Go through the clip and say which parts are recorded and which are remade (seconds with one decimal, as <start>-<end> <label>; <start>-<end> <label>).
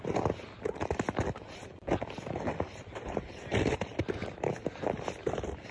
0.0-5.7 recorded